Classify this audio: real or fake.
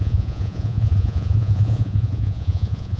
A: fake